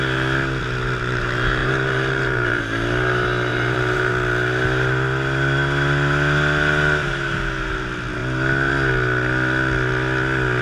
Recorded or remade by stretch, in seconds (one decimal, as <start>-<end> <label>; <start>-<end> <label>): 0.0-1.6 recorded; 1.6-2.6 remade; 2.6-3.5 recorded; 3.5-4.1 remade; 4.1-10.6 recorded